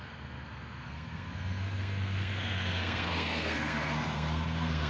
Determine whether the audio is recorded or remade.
remade